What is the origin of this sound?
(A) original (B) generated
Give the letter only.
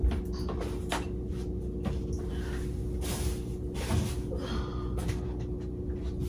A